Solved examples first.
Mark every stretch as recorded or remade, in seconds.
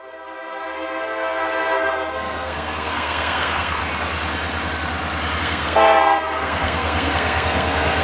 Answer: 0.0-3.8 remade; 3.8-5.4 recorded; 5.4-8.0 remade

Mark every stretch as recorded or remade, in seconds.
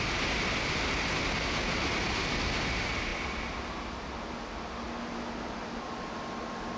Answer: 0.0-6.8 recorded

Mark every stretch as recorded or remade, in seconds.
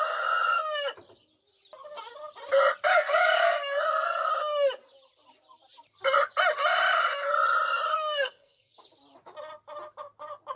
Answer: 0.0-2.9 recorded; 2.9-4.3 remade; 4.3-7.9 recorded; 7.9-8.8 remade; 8.8-10.6 recorded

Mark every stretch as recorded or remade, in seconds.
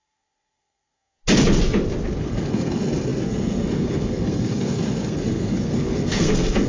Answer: 0.0-1.2 remade; 1.2-2.2 recorded; 2.2-6.7 remade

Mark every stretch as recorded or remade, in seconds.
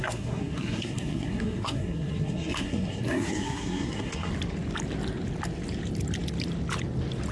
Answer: 0.0-4.3 remade; 4.3-7.3 recorded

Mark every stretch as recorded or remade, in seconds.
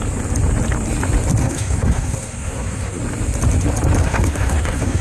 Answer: 0.0-1.4 recorded; 1.4-3.0 remade; 3.0-4.0 recorded; 4.0-5.0 remade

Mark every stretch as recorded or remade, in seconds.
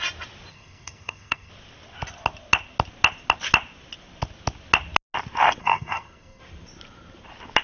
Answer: 0.0-0.5 recorded; 0.5-1.5 remade; 1.5-5.6 recorded; 5.6-6.4 remade; 6.4-7.6 recorded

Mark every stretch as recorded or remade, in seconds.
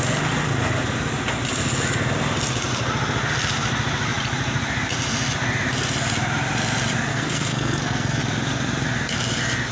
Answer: 0.0-7.1 recorded; 7.1-8.2 remade; 8.2-9.7 recorded